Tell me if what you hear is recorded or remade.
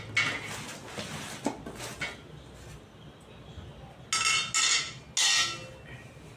recorded